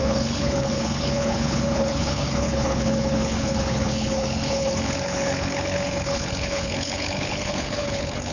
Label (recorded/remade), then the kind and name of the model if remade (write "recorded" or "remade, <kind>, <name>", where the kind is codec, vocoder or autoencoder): remade, codec, HILCodec